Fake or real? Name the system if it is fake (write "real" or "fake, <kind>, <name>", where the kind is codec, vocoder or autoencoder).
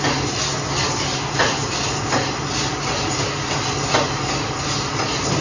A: real